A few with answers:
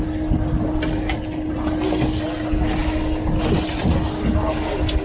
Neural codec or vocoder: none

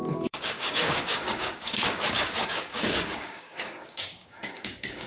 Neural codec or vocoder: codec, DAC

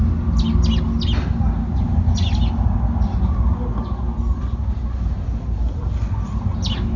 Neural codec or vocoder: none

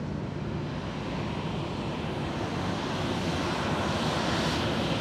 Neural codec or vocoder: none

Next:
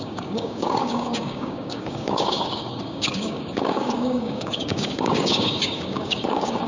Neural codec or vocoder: codec, DAC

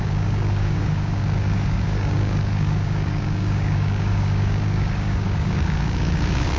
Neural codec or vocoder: codec, DAC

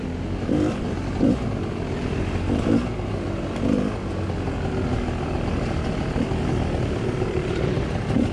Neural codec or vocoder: none